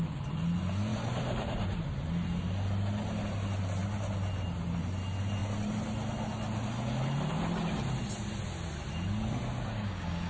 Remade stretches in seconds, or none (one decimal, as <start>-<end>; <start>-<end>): 9.7-10.3